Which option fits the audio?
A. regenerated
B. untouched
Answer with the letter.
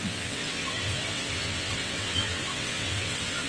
A